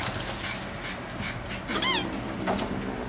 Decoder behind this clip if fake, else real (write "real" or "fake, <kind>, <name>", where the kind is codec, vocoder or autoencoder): real